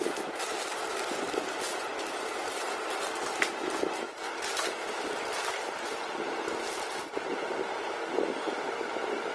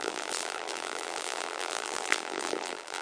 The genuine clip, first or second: first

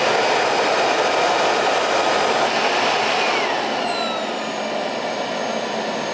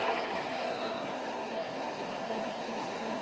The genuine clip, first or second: first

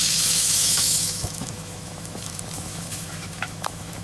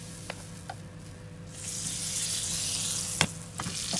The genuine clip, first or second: second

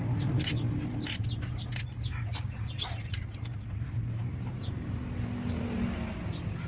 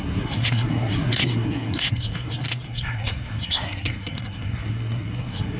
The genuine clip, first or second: first